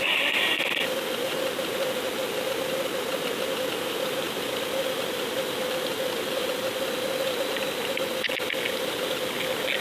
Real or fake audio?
real